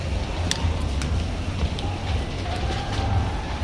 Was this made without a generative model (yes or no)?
yes